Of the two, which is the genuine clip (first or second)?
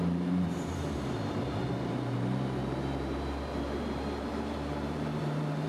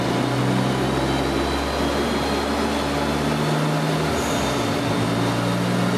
second